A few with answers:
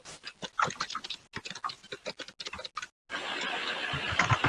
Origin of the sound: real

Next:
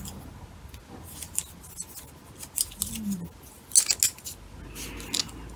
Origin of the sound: real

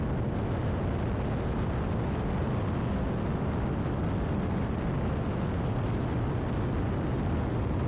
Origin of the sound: real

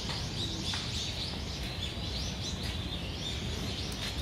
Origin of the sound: real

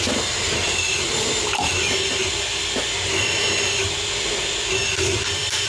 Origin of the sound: fake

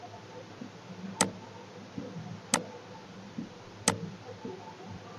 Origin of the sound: real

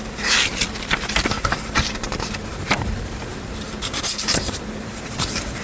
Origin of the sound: fake